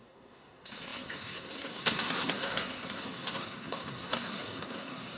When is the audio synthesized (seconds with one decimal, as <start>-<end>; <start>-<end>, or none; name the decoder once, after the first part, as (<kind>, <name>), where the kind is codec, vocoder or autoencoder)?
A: 0.0-5.2 (codec, SNAC)